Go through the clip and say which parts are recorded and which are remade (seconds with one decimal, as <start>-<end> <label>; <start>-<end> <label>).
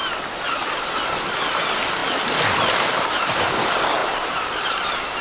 0.0-1.4 recorded; 1.4-2.0 remade; 2.0-2.5 recorded; 2.5-5.2 remade